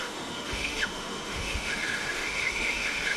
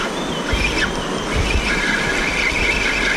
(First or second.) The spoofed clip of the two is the first